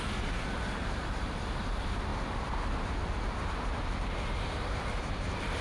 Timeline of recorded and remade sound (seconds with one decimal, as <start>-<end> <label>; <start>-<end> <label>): 0.0-2.1 remade; 2.1-3.8 recorded; 3.8-5.6 remade